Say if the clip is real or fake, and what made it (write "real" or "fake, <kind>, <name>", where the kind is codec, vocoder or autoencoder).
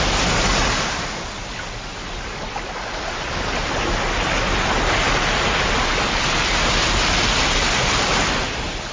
real